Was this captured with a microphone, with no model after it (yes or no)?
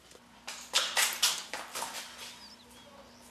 yes